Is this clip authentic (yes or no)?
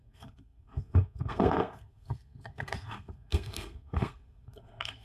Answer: no